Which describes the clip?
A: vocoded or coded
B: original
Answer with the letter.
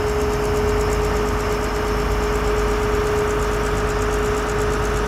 B